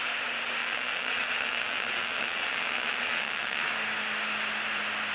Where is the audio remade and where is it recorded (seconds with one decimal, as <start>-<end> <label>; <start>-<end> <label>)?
0.0-0.6 recorded; 0.6-3.7 remade; 3.7-5.1 recorded